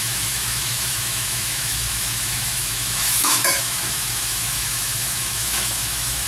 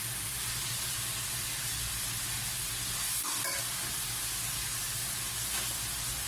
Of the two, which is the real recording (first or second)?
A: second